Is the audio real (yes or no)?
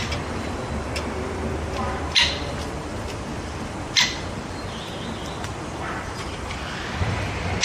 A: no